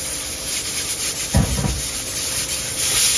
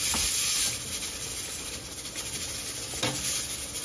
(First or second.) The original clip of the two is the second